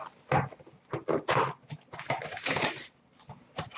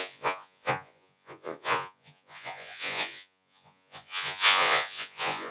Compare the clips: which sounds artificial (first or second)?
second